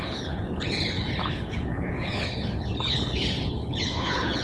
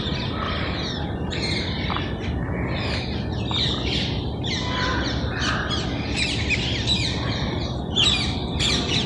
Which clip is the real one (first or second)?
second